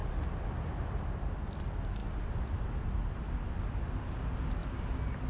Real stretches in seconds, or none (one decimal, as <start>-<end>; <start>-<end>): 0.0-5.3